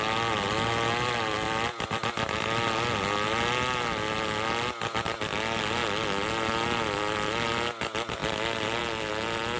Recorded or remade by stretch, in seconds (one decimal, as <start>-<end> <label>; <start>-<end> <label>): 0.0-9.6 recorded